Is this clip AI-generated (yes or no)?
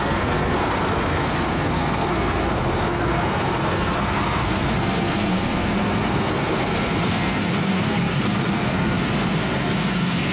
yes